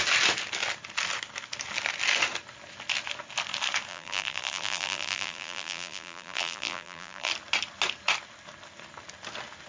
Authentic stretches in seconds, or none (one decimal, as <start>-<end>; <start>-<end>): 0.0-3.9; 7.3-9.7